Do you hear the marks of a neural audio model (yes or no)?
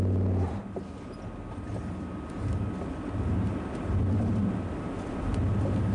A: no